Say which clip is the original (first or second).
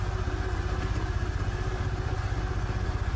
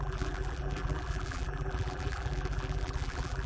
first